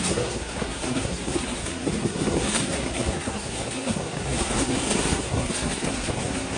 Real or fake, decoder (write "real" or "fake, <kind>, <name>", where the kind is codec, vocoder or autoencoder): fake, codec, SNAC